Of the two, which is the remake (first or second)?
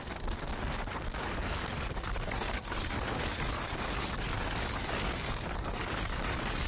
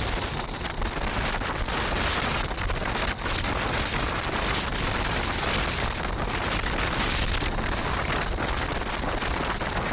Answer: first